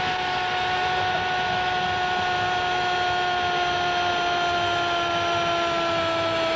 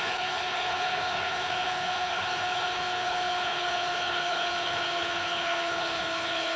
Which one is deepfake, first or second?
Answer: second